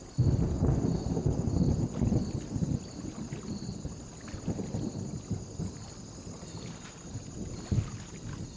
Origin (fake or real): real